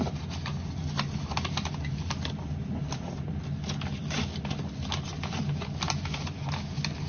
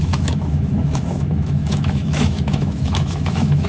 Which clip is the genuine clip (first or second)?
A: first